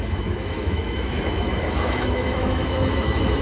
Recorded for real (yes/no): no